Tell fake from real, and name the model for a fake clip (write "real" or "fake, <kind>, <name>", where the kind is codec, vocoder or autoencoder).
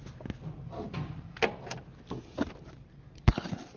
real